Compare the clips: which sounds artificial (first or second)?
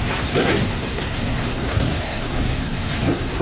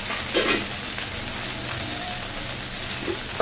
first